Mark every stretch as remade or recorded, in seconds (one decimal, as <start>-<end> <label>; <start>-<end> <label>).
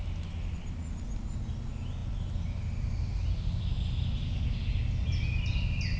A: 0.0-6.0 recorded